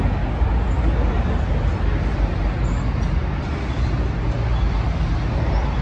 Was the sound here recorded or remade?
recorded